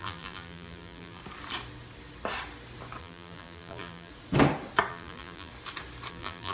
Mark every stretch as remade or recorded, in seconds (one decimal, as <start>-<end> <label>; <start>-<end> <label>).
0.0-1.2 remade; 1.2-3.0 recorded; 3.0-4.1 remade; 4.1-4.9 recorded; 4.9-5.5 remade; 5.5-6.1 recorded; 6.1-6.5 remade

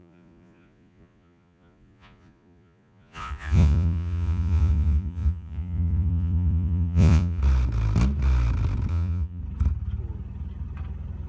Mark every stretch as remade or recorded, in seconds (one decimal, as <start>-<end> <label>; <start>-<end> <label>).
0.0-7.4 remade; 7.4-8.9 recorded; 8.9-9.4 remade; 9.4-11.3 recorded